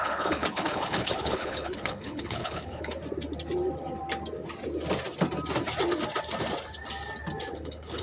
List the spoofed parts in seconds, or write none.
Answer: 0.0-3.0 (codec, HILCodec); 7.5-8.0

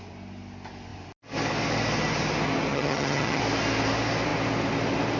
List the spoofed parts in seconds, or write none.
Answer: 2.7-3.4 (vocoder, HiFi-GAN)

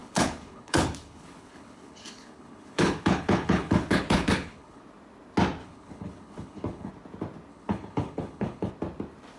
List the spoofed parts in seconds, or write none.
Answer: 0.0-4.8 (codec, HILCodec); 5.6-6.9; 7.5-8.7

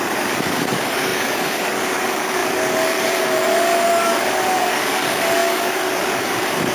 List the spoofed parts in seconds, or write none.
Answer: 0.0-6.7 (codec, DAC)

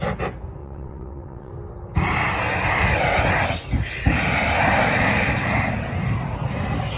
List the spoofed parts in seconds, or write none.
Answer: 0.6-1.5 (vocoder, WaveNeXt)

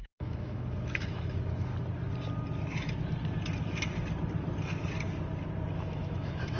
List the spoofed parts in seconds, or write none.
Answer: 0.0-1.7 (autoencoder, DAC-VAE); 5.7-6.6

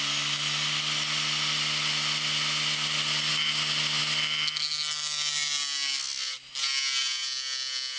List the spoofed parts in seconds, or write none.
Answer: none